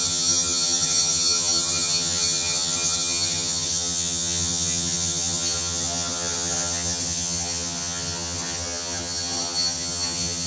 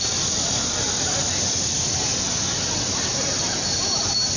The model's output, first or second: first